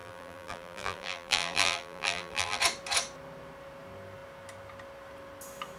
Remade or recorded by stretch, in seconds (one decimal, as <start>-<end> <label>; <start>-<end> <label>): 0.0-2.6 remade; 2.6-5.8 recorded